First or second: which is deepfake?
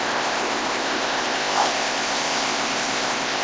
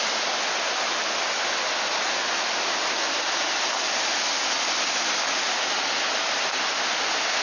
first